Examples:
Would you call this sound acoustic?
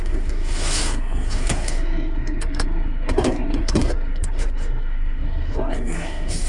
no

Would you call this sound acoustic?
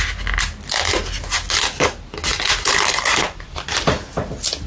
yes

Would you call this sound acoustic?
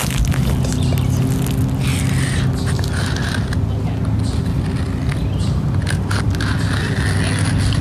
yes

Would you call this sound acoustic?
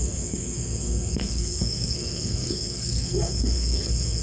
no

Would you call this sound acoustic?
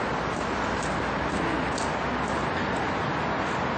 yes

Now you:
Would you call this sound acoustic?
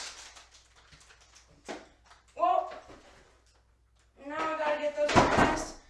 yes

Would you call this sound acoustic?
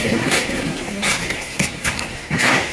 no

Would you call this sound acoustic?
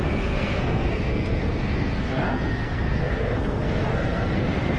no